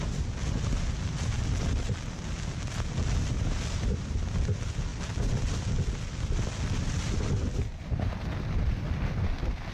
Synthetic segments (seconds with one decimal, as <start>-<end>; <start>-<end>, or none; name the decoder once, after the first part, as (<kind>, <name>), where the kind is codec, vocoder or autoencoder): none